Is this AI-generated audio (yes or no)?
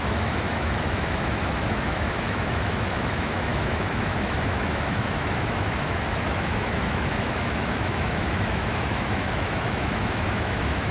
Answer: yes